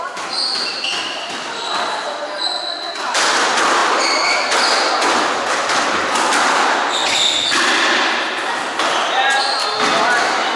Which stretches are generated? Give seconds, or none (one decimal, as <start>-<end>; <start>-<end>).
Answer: 0.7-3.0; 3.8-4.9; 7.0-7.6